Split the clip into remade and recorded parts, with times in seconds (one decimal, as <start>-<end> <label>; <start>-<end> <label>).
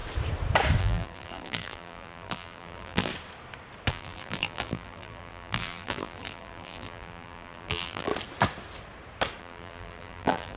0.0-0.8 recorded; 0.8-3.1 remade; 3.1-3.9 recorded; 3.9-8.1 remade; 8.1-9.4 recorded; 9.4-10.6 remade